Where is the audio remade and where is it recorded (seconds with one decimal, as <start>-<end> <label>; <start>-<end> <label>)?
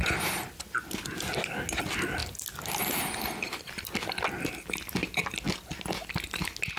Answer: 0.0-6.8 recorded